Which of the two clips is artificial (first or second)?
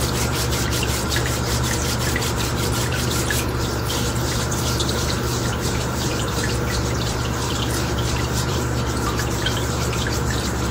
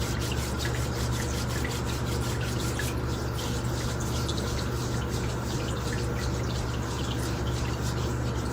first